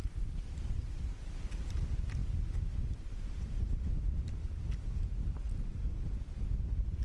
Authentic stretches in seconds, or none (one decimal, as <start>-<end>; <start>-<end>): 1.3-2.2; 6.4-7.0